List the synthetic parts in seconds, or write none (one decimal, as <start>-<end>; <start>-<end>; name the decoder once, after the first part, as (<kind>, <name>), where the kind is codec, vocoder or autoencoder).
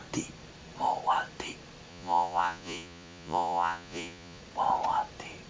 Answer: 1.9-4.4 (vocoder, Vocos)